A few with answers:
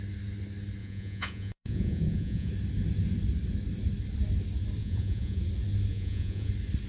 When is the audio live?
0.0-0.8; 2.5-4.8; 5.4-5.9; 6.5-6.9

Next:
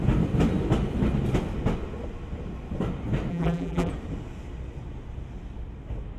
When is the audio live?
0.0-3.3; 3.9-6.2